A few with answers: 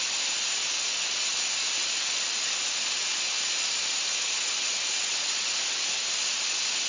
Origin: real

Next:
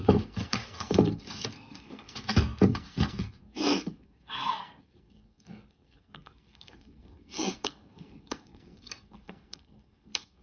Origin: fake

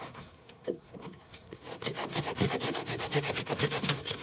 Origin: fake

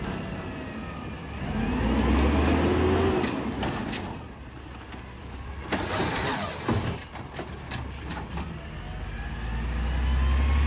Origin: real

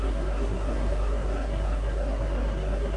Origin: fake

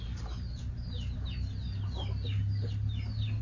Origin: real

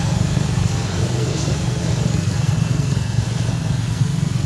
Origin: fake